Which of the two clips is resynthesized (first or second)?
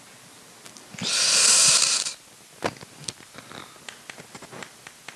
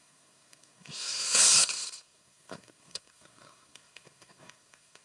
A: second